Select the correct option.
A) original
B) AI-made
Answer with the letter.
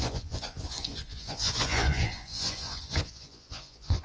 B